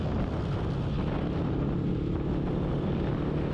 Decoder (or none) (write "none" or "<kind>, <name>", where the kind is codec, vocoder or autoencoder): none